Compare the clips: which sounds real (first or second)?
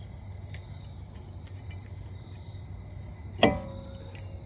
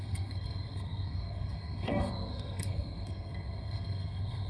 first